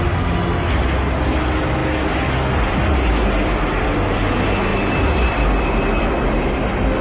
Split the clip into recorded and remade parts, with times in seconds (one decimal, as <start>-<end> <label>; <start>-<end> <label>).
0.0-4.7 recorded; 4.7-5.7 remade; 5.7-7.0 recorded